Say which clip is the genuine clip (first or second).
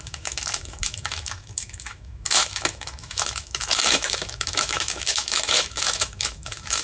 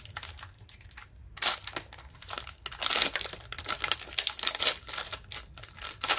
second